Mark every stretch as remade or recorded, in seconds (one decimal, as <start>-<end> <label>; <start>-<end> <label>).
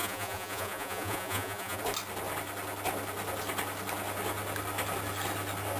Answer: 0.0-1.8 remade; 1.8-5.8 recorded